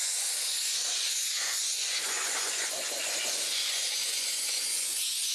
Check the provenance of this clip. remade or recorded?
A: remade